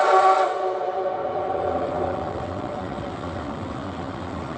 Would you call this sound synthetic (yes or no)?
yes